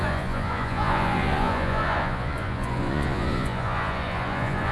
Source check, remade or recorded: remade